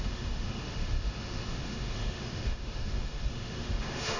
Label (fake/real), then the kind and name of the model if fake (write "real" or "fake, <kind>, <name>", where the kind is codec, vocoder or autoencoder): fake, autoencoder, DAC-VAE